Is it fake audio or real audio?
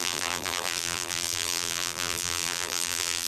fake